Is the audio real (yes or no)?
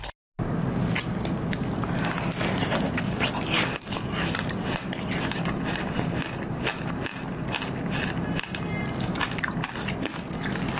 yes